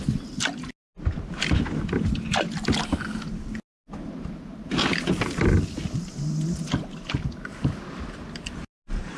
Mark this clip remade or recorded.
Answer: recorded